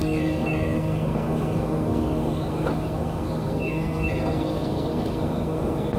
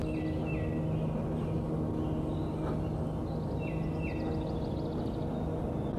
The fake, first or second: first